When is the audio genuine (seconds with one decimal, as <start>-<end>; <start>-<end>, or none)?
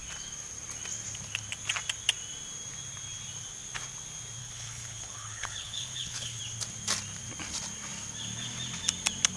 0.0-4.4; 6.4-9.4